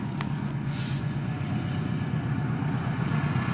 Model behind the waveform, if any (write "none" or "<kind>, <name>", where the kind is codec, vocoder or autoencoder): vocoder, Vocos